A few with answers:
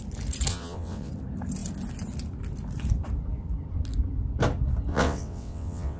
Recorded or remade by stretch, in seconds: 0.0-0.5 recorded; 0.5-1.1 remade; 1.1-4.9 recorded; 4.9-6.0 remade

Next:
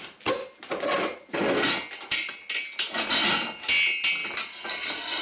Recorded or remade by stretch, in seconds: 0.0-5.2 recorded

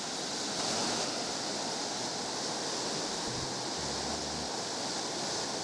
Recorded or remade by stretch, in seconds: 0.0-5.6 recorded

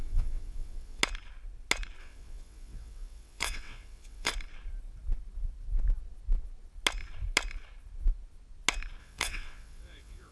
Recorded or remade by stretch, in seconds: 0.0-1.0 remade; 1.0-2.0 recorded; 2.0-4.3 remade; 4.3-9.0 recorded; 9.0-10.3 remade

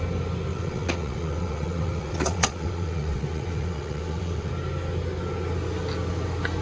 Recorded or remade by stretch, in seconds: 0.0-0.5 recorded; 0.5-4.5 remade; 4.5-6.6 recorded

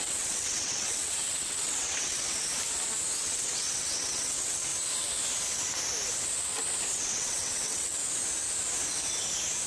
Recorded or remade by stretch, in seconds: 0.0-2.5 remade; 2.5-3.2 recorded; 3.2-4.7 remade; 4.7-6.9 recorded; 6.9-8.0 remade; 8.0-9.7 recorded

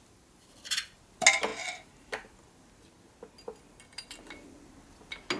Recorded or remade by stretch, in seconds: 0.0-5.4 recorded